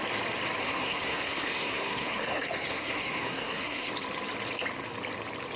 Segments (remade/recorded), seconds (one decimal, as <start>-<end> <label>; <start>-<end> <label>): 0.0-0.6 recorded; 0.6-3.9 remade; 3.9-5.6 recorded